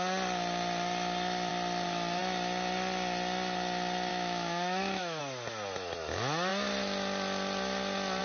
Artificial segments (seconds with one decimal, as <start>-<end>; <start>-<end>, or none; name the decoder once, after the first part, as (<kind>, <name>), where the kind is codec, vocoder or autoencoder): 4.1-5.2 (autoencoder, DAC-VAE)